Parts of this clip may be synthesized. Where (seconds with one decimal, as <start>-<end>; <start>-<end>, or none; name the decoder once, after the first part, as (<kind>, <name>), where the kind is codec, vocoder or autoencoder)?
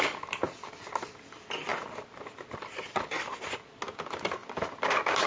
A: none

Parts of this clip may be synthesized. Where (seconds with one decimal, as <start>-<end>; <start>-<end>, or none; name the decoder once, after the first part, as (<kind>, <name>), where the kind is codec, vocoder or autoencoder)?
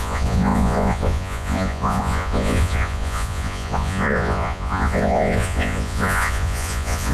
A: 0.0-7.1 (vocoder, Vocos)